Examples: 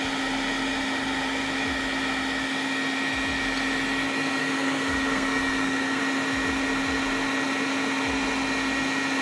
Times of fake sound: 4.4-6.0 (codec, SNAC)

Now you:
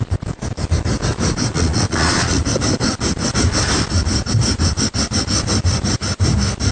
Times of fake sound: 1.5-2.4 (vocoder, Vocos)

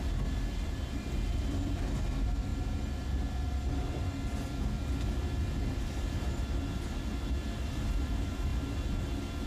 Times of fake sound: 0.0-2.5 (vocoder, BigVGAN v2); 7.3-8.5

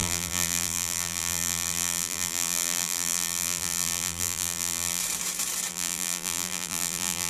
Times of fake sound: 0.0-5.0 (vocoder, BigVGAN v2); 5.7-7.3

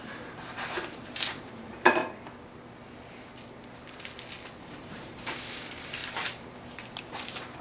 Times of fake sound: 0.0-2.0 (vocoder, BigVGAN v2); 4.6-6.0; 7.0-7.6

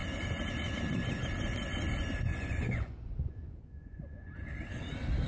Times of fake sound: 2.3-4.3 (vocoder, Vocos)

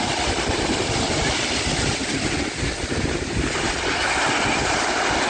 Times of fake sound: none